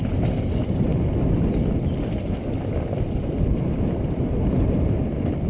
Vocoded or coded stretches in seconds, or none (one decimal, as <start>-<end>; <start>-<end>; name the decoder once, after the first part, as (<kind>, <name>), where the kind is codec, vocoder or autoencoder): none